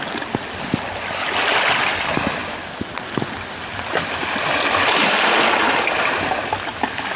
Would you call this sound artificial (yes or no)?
no